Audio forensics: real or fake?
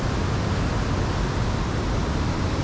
real